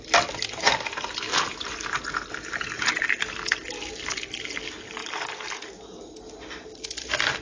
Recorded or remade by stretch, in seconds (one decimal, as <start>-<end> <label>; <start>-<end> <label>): 0.0-1.3 recorded; 1.3-2.0 remade; 2.0-5.0 recorded; 5.0-6.0 remade; 6.0-7.4 recorded